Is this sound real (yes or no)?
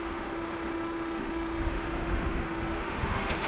no